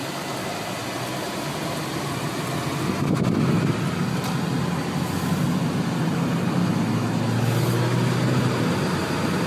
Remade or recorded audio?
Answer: recorded